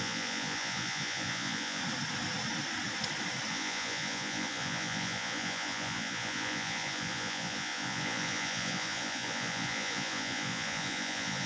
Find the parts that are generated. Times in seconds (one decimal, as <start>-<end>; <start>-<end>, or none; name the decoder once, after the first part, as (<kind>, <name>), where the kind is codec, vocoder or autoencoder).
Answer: 0.0-1.8 (vocoder, Vocos); 3.5-11.5